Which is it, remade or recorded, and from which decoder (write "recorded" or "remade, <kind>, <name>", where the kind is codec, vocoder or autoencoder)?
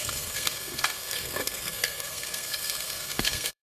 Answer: remade, codec, SNAC